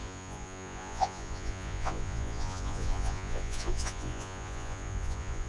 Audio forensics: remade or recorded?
remade